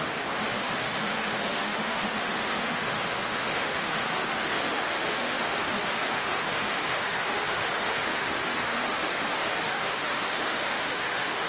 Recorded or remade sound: remade